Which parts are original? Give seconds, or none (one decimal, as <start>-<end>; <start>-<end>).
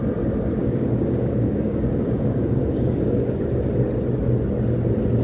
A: 0.0-0.6; 3.7-5.2